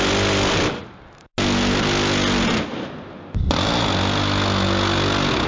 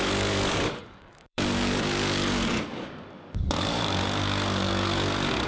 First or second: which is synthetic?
second